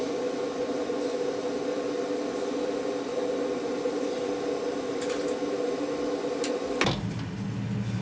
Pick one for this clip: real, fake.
real